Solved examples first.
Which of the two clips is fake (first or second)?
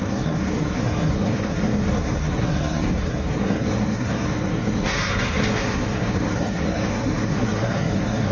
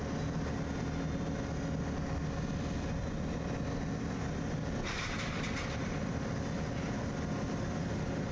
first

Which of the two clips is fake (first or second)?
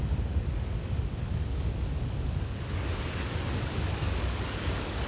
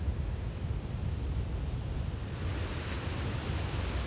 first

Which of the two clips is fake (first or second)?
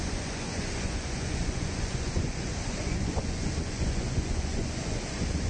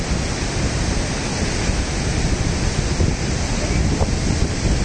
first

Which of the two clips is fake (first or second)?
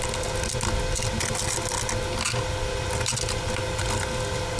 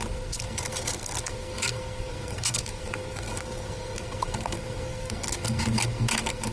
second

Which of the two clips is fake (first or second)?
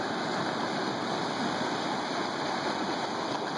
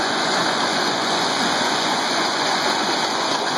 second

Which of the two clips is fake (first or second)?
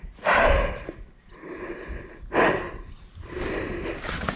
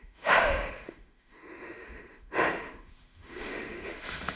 second